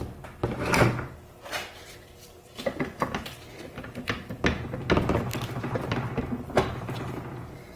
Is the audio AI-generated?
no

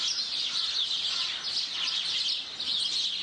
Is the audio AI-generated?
no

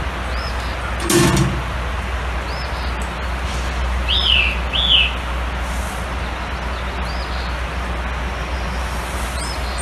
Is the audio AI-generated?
no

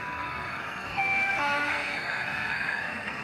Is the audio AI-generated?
yes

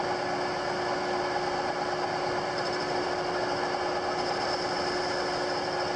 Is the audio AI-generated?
no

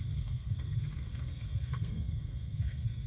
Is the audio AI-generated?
yes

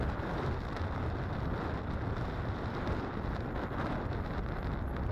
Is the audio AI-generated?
no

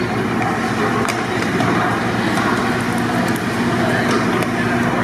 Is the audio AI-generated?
no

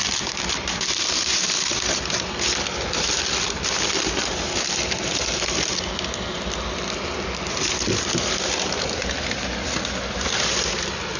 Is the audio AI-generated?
no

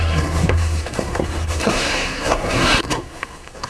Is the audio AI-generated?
yes